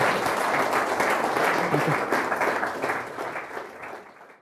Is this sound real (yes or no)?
yes